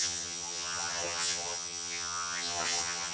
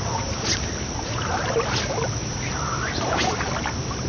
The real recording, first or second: second